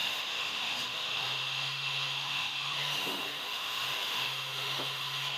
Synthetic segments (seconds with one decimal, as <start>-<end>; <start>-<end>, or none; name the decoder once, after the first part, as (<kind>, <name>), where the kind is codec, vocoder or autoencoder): 0.0-5.4 (autoencoder, DAC-VAE)